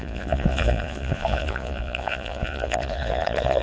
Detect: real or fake fake